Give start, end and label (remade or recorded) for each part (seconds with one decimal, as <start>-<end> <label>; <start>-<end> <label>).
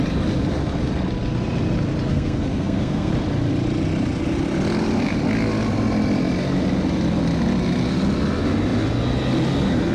0.0-2.1 recorded; 2.1-3.1 remade; 3.1-9.9 recorded